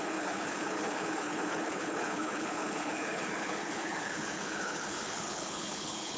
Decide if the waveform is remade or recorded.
remade